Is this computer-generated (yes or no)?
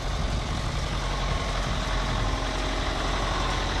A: no